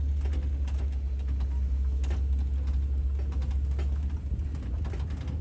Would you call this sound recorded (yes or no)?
yes